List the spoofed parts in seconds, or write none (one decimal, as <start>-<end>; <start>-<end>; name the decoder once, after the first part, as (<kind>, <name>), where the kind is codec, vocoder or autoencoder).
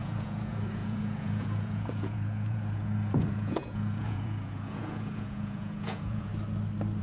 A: 0.0-6.3 (vocoder, Vocos)